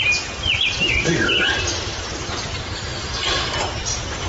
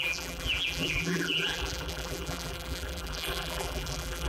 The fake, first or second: second